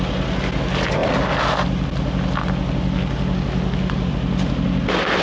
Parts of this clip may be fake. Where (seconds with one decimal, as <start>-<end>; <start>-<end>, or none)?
none